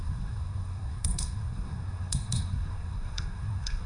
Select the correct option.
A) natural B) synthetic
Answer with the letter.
B